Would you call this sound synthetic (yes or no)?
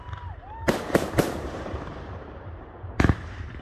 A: yes